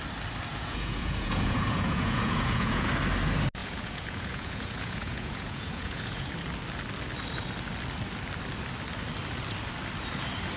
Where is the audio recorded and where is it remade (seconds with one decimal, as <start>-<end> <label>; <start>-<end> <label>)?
0.0-0.5 recorded; 0.5-2.9 remade; 2.9-3.6 recorded; 3.6-6.3 remade; 6.3-10.6 recorded